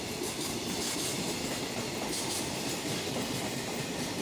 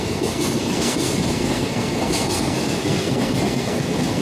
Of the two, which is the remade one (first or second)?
second